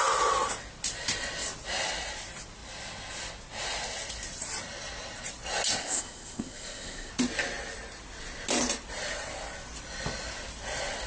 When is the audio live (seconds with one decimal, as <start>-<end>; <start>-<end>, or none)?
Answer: 0.0-5.8; 7.1-11.1